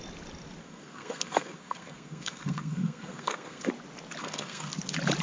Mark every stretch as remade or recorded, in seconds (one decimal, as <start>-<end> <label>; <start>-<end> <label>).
0.0-0.6 recorded; 0.6-3.7 remade; 3.7-4.2 recorded; 4.2-4.7 remade; 4.7-5.2 recorded